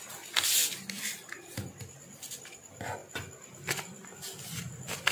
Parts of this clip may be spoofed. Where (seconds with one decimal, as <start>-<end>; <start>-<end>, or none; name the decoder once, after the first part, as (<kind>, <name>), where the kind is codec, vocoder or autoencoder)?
none